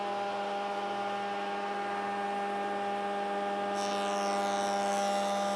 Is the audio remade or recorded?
recorded